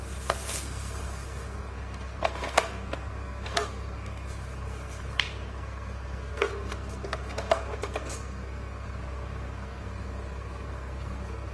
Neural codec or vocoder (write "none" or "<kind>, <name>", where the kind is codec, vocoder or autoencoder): codec, SNAC